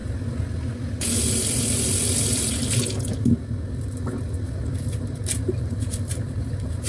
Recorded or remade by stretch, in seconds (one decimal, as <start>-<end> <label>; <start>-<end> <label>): 0.0-4.6 recorded; 4.6-6.9 remade